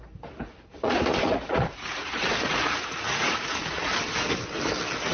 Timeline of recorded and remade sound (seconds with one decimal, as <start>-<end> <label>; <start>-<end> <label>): 0.0-0.8 recorded; 0.8-3.9 remade; 3.9-5.1 recorded